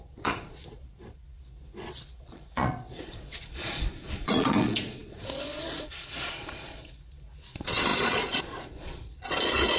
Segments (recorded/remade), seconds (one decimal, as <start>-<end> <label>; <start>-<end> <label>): 0.0-9.8 remade

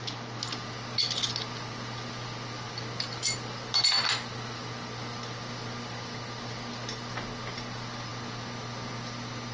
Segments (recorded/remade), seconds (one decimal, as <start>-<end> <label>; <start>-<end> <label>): 0.0-9.5 recorded

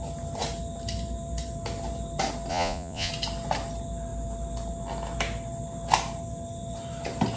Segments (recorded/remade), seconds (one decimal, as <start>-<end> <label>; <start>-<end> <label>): 0.0-2.5 recorded; 2.5-3.1 remade; 3.1-7.4 recorded

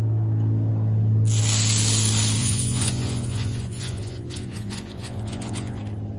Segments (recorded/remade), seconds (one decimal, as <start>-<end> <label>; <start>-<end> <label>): 0.0-2.4 recorded; 2.4-5.8 remade; 5.8-6.2 recorded

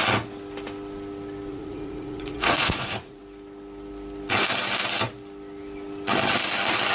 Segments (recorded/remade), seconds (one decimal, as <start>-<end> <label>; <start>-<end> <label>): 0.0-1.5 recorded; 1.5-3.2 remade; 3.2-6.9 recorded